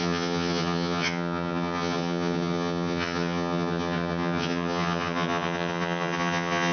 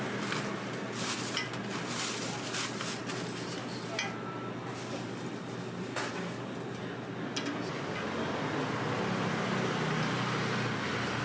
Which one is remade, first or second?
first